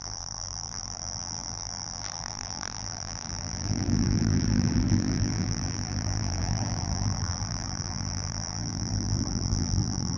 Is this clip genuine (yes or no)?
no